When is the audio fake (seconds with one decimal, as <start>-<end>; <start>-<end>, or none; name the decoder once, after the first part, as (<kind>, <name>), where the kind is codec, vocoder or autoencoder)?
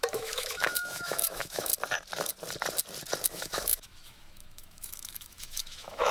0.0-1.7 (autoencoder, DAC-VAE); 3.3-6.1